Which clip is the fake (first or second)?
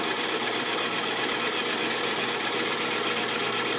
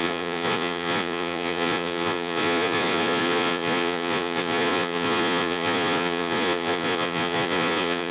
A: second